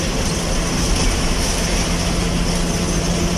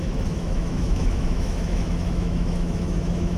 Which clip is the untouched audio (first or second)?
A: first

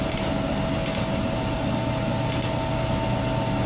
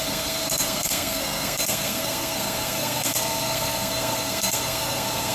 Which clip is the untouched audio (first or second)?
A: first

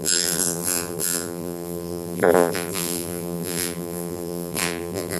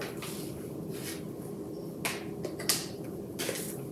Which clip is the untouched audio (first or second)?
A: second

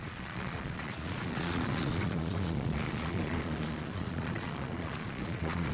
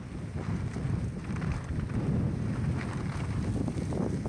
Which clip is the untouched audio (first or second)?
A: second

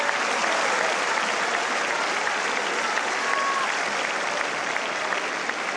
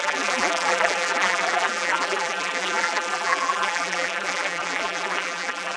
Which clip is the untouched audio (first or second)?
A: first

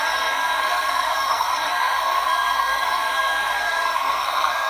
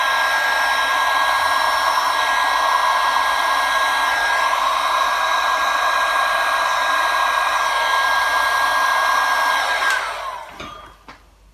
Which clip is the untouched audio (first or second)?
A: second